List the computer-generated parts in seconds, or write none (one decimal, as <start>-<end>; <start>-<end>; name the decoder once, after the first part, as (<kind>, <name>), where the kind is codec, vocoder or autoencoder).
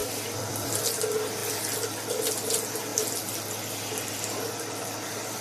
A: 0.0-0.7 (vocoder, BigVGAN v2)